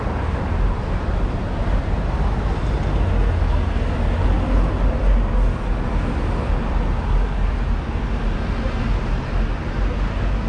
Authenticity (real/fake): real